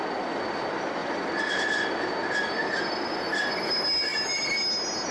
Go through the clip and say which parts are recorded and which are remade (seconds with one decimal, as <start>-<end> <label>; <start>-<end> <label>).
0.0-5.1 recorded